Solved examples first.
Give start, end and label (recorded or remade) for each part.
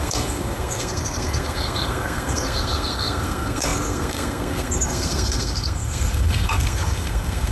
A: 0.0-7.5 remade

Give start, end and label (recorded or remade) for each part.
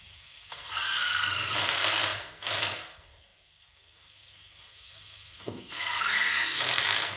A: 0.0-7.2 remade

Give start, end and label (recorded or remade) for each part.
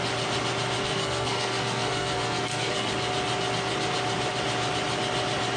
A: 0.0-0.8 recorded; 0.8-2.9 remade; 2.9-5.6 recorded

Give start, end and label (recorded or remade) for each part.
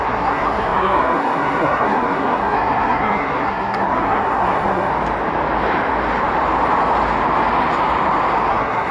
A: 0.0-4.9 remade; 4.9-8.5 recorded; 8.5-8.9 remade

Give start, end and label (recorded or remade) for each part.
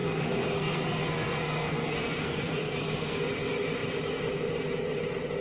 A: 0.0-3.2 remade; 3.2-5.4 recorded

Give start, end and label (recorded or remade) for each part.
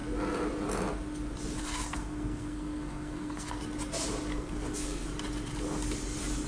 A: 0.0-1.6 recorded; 1.6-3.6 remade; 3.6-4.3 recorded; 4.3-5.1 remade; 5.1-6.5 recorded